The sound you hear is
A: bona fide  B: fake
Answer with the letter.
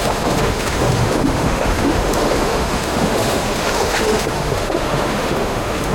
B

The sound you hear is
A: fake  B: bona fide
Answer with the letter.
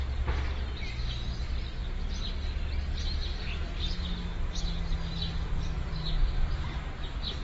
B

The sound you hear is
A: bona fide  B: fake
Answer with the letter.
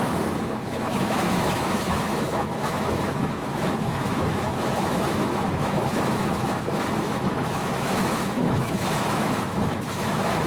B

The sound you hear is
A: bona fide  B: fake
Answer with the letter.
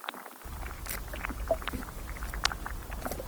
A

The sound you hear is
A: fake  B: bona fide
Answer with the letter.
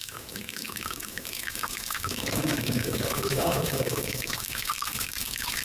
A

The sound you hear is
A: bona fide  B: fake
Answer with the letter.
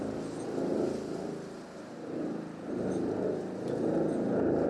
A